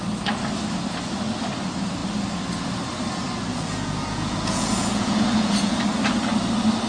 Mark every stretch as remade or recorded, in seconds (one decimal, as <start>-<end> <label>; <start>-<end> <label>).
0.0-3.5 recorded; 3.5-5.8 remade; 5.8-6.9 recorded